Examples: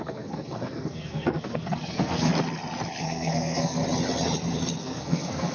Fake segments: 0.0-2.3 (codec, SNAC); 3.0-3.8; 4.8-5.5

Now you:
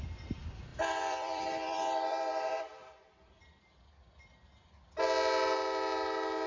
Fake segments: 0.7-3.6 (vocoder, BigVGAN v2)

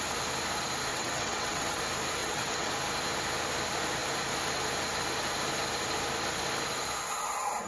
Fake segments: 0.9-1.8 (vocoder, WaveNeXt); 2.2-2.7

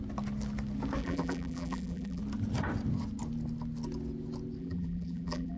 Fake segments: 1.0-2.2 (vocoder, BigVGAN v2); 4.6-5.6

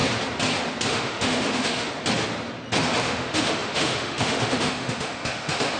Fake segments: 0.9-1.9 (autoencoder, DAC-VAE); 3.0-5.8

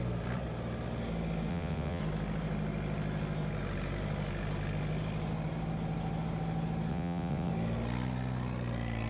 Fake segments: 1.5-2.0 (vocoder, WaveNeXt); 6.9-7.5

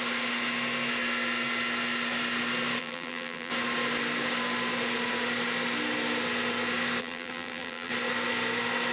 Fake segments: 2.8-3.5 (vocoder, BigVGAN v2); 7.0-7.9